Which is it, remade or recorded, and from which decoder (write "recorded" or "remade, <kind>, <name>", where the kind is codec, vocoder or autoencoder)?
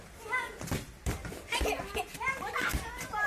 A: recorded